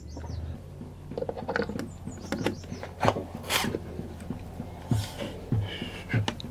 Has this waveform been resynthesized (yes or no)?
no